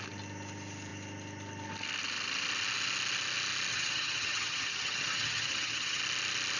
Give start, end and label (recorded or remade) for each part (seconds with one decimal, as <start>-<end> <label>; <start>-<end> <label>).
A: 0.0-3.7 recorded; 3.7-6.0 remade; 6.0-6.6 recorded